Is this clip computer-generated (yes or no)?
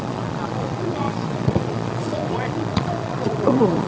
yes